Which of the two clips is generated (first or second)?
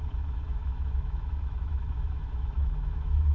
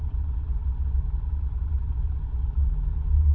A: first